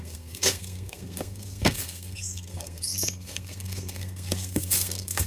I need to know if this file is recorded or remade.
remade